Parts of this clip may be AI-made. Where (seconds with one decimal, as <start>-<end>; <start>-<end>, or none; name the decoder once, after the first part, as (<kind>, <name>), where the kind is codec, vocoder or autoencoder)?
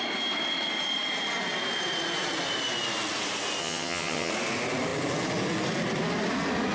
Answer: 3.6-4.3 (vocoder, HiFi-GAN)